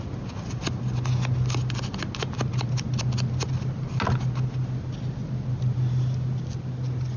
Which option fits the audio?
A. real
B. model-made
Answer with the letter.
A